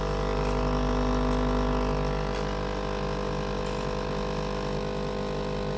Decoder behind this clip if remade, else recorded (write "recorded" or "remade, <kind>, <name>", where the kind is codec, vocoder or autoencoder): recorded